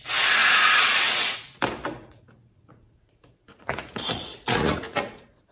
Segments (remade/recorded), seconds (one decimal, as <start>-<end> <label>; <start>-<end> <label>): 0.0-0.4 recorded; 0.4-1.6 remade; 1.6-2.0 recorded; 2.0-5.5 remade